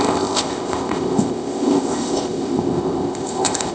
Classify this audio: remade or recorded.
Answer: remade